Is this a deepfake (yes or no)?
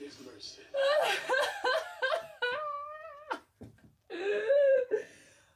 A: yes